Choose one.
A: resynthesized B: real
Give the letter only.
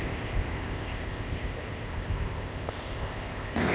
A